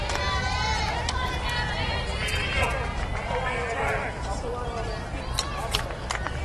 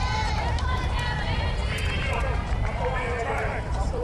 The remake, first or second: second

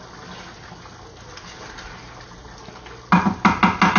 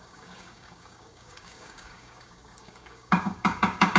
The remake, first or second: second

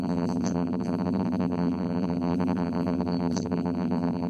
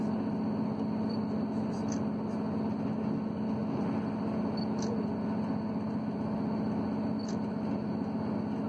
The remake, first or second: first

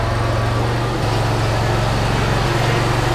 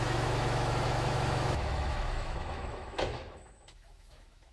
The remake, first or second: second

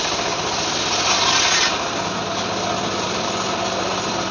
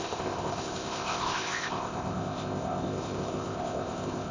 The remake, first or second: second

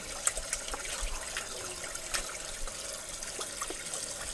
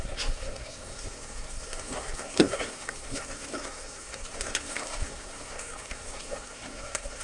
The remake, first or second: second